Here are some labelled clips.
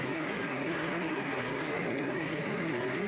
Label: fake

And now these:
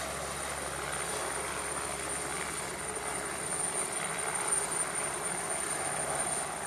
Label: real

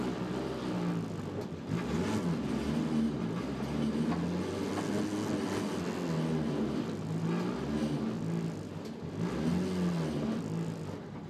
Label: real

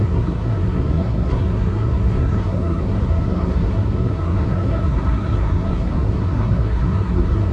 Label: fake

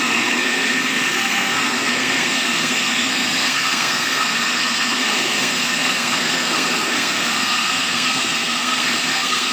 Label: fake